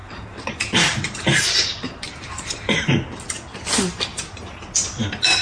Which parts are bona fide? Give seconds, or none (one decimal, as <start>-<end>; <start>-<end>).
3.2-4.1; 4.7-5.4